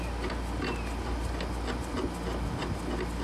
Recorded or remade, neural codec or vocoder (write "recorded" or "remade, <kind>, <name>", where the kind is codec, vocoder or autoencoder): recorded